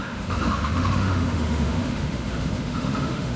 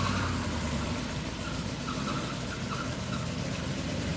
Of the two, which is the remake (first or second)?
first